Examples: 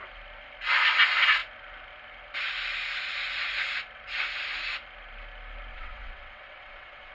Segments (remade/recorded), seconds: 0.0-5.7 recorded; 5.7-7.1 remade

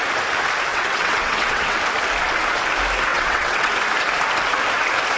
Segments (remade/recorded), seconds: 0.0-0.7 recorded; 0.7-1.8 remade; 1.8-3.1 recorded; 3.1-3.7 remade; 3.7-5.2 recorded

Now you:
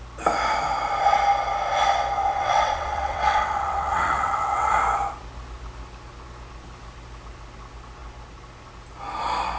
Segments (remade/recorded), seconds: 0.0-2.2 recorded; 2.2-4.7 remade; 4.7-9.6 recorded

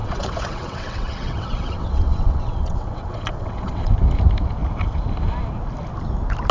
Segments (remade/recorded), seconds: 0.0-3.9 remade; 3.9-6.5 recorded